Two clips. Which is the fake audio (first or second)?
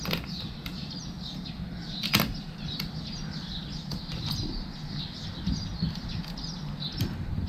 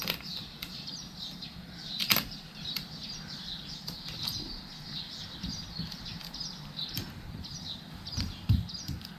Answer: second